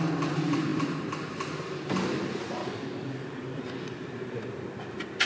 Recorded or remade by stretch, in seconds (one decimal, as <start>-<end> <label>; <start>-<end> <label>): 0.0-2.6 recorded; 2.6-3.6 remade; 3.6-5.3 recorded